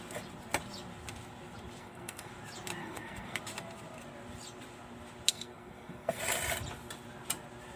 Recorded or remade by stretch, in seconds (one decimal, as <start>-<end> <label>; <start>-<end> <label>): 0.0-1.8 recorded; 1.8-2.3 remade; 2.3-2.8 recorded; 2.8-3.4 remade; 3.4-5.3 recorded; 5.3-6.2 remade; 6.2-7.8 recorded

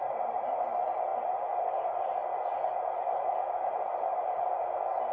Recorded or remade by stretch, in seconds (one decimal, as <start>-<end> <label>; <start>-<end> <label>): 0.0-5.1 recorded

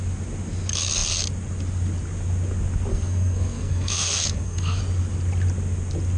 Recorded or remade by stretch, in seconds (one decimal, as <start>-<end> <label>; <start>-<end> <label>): 0.0-2.9 recorded; 2.9-4.8 remade; 4.8-6.2 recorded

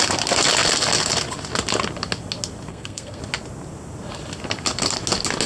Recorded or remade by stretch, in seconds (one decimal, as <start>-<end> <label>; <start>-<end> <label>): 0.0-2.7 recorded; 2.7-3.2 remade; 3.2-5.5 recorded